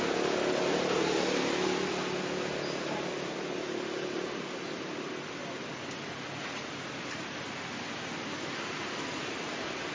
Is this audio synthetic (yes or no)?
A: no